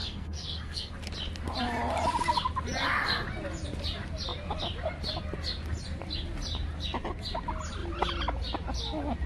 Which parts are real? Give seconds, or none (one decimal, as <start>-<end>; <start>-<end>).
0.9-9.3